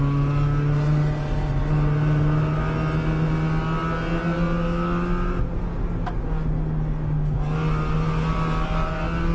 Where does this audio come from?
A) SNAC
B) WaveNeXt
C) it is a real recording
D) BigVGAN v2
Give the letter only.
C